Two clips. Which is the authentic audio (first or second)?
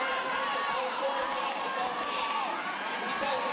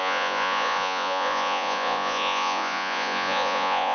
first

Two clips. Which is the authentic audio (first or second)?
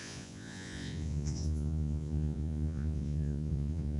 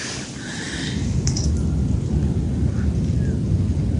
second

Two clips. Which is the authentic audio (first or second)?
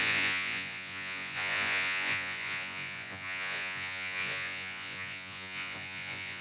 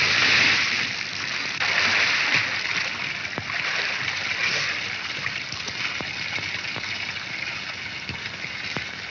second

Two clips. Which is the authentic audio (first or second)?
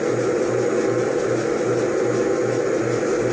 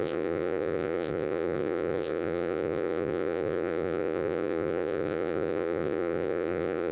first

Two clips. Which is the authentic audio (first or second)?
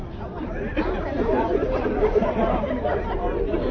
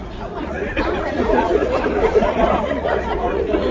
first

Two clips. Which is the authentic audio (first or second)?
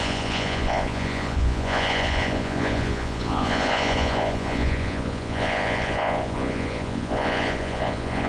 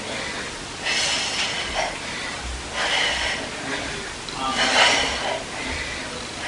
second